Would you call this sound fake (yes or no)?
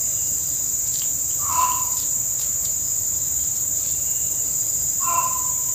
yes